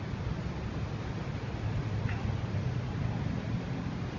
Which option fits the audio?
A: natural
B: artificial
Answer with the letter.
A